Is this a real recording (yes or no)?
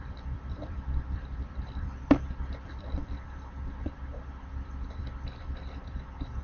no